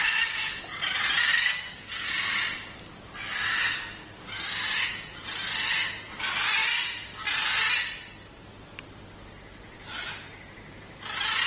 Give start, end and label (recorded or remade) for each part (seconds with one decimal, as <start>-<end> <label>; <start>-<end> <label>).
0.0-1.3 recorded; 1.3-2.1 remade; 2.1-11.5 recorded